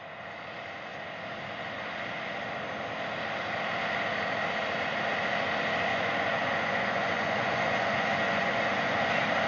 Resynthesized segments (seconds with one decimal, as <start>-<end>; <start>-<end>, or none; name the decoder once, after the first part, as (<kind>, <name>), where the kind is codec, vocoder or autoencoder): 5.9-9.1 (vocoder, Vocos)